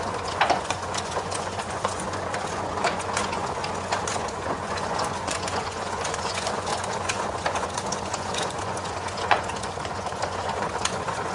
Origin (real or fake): fake